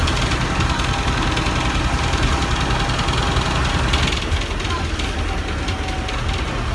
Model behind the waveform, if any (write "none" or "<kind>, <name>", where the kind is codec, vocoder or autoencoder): none